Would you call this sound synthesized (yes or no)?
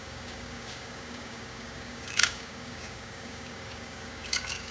yes